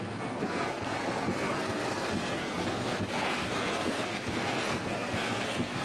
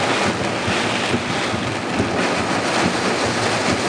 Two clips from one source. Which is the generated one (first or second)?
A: first